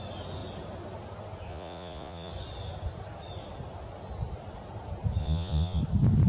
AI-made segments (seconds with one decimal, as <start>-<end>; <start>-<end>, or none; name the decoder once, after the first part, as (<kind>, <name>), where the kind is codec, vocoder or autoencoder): 1.5-2.3 (vocoder, Vocos); 5.2-5.8